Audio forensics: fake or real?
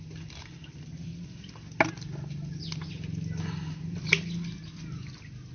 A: real